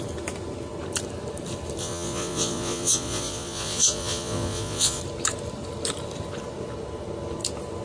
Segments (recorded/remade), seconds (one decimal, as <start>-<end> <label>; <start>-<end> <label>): 0.0-1.8 recorded; 1.8-5.0 remade; 5.0-7.8 recorded